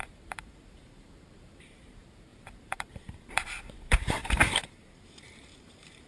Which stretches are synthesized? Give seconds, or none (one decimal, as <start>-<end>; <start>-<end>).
0.0-6.1